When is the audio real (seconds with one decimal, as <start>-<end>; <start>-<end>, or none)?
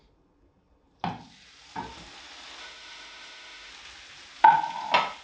0.0-2.6; 3.7-5.2